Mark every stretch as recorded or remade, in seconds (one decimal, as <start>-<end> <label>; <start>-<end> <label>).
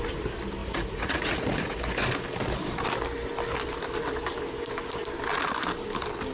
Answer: 0.0-0.6 recorded; 0.6-1.8 remade; 1.8-6.3 recorded